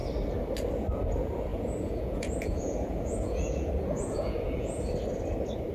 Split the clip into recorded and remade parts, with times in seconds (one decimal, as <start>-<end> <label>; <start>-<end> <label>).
0.0-1.5 recorded; 1.5-4.9 remade; 4.9-5.7 recorded